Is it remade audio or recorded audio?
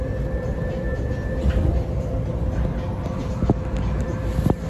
recorded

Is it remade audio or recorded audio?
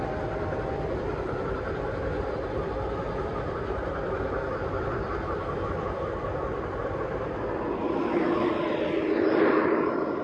remade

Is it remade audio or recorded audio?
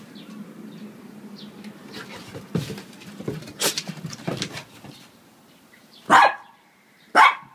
recorded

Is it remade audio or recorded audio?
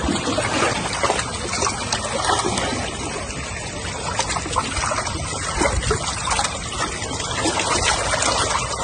recorded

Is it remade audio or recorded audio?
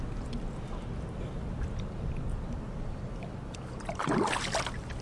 recorded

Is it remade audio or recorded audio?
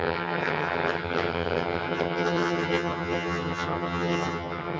remade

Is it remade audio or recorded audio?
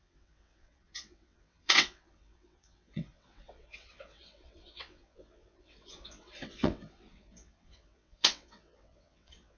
remade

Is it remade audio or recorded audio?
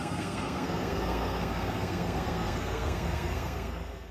remade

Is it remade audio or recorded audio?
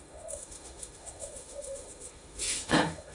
remade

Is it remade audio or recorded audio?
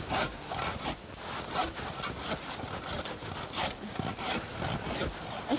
recorded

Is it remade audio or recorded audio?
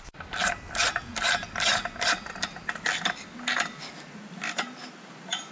recorded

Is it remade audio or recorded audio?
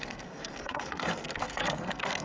remade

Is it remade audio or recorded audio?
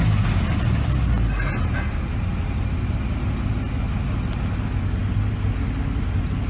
recorded